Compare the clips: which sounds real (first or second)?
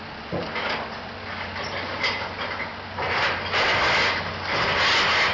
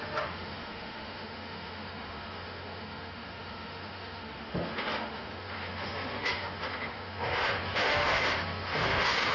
first